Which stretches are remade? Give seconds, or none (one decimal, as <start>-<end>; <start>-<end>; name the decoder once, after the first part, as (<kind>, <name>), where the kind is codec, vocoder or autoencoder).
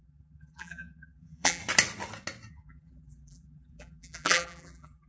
0.0-1.6 (vocoder, BigVGAN v2); 2.5-5.1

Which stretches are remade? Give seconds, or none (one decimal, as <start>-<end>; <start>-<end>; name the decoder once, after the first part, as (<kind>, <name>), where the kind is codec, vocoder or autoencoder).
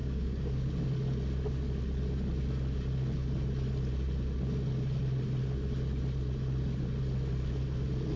0.0-0.7 (codec, DAC)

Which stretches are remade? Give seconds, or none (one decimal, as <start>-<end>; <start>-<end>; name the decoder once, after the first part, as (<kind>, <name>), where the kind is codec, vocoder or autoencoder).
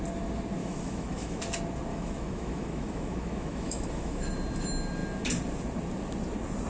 0.6-1.4 (autoencoder, DAC-VAE); 1.9-4.2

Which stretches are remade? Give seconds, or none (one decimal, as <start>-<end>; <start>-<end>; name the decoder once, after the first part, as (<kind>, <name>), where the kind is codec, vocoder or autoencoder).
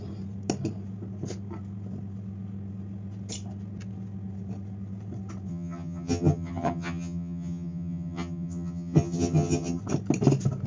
5.5-9.8 (vocoder, HiFi-GAN)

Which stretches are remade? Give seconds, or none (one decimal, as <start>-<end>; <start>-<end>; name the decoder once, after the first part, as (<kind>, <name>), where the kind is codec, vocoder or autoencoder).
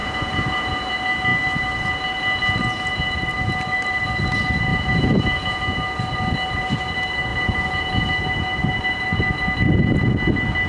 0.0-0.9 (vocoder, Vocos); 4.7-5.6; 7.3-8.1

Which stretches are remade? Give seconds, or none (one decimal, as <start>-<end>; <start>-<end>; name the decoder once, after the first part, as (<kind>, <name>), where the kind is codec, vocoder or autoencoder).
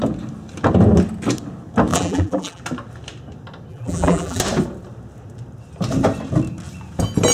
1.9-2.6 (vocoder, BigVGAN v2); 3.7-4.4